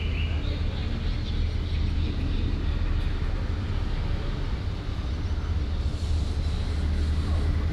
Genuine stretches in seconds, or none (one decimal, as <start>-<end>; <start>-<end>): 0.0-7.7